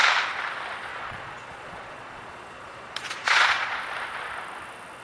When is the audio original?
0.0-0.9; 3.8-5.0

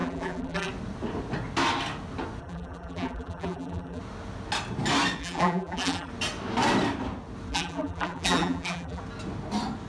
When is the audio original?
0.7-2.4; 4.0-5.2; 6.1-7.5; 9.0-9.9

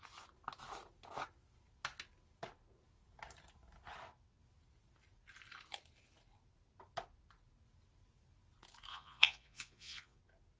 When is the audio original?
0.0-8.9; 10.2-10.6

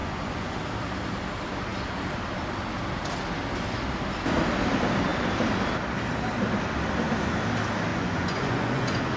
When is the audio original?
0.6-7.9

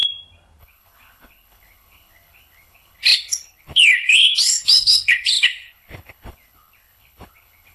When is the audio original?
0.0-0.6

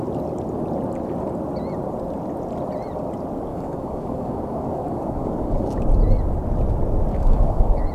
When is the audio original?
0.0-3.5; 5.8-7.1